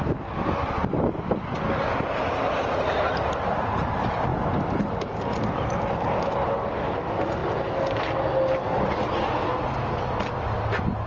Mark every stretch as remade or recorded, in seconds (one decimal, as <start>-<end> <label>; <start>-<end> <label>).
0.0-11.1 recorded